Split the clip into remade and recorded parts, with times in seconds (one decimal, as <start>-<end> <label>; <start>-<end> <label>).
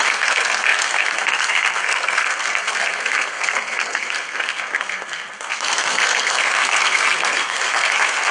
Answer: 0.0-8.3 remade